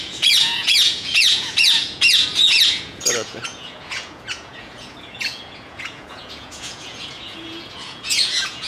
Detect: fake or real fake